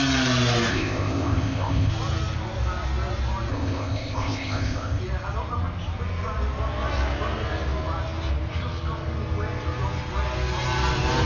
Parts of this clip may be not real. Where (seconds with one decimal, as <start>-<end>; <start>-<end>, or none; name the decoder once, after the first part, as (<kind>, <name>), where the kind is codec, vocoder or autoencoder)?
0.7-1.9 (codec, ZipCodec); 3.5-5.0